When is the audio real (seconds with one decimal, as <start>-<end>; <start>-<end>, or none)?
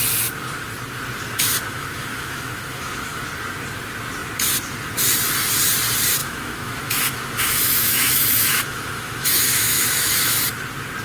0.0-1.7; 3.2-6.2; 10.4-11.0